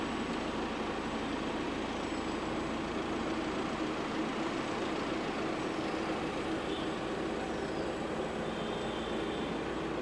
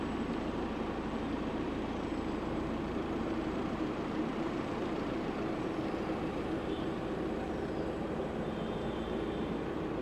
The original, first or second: first